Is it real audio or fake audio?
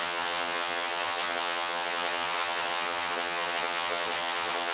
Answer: fake